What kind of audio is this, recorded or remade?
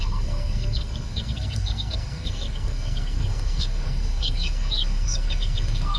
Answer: remade